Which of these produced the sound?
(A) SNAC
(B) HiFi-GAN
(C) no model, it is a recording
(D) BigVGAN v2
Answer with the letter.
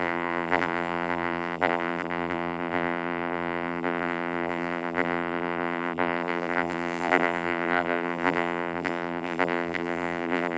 D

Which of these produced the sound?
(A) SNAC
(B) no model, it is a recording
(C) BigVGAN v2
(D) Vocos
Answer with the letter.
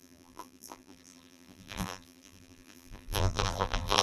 C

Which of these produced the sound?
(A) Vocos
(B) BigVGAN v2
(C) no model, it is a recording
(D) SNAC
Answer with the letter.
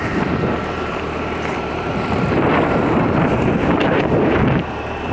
B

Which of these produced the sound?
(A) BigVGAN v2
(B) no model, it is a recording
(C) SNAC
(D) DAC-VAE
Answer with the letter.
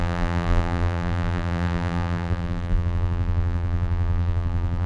A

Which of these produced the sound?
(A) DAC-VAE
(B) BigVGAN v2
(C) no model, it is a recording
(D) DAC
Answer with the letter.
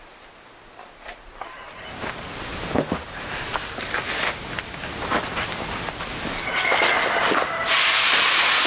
C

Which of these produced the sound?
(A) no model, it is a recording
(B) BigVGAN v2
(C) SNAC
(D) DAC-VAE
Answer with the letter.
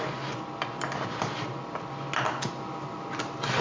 A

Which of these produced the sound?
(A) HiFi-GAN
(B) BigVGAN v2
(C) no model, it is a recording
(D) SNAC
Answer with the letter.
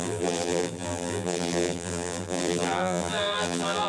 B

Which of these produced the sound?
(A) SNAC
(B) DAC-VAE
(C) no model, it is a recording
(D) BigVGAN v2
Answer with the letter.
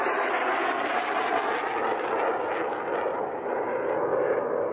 C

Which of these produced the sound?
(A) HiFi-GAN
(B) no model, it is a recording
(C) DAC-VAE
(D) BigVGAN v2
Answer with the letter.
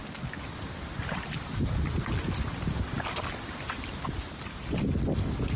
B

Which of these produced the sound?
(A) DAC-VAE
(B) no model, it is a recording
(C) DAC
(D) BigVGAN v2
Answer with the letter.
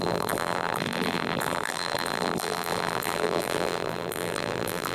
D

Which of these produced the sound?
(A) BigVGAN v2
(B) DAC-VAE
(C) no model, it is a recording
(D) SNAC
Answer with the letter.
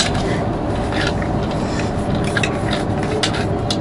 C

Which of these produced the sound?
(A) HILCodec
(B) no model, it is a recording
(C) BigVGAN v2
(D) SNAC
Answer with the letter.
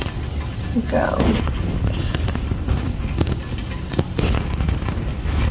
B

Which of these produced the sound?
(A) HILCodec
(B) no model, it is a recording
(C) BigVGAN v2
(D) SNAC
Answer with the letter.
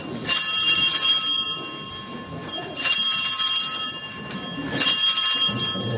C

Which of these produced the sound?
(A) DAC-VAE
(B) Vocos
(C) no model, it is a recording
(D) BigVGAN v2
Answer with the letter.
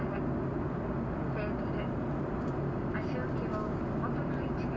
C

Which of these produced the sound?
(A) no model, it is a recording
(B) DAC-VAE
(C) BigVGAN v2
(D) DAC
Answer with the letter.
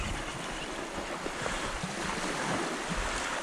C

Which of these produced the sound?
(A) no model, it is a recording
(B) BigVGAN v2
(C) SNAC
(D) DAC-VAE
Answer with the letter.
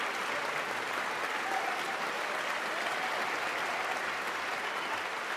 A